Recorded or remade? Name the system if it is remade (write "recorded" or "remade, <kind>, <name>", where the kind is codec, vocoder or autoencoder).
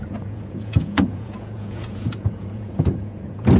remade, vocoder, Vocos